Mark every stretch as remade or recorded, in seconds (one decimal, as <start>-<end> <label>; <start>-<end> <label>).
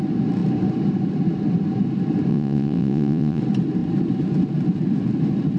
0.0-2.3 recorded; 2.3-3.4 remade; 3.4-5.6 recorded